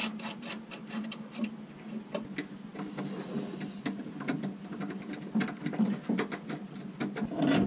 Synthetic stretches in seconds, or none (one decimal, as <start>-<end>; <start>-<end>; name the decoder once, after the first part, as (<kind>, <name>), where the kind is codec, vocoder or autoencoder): none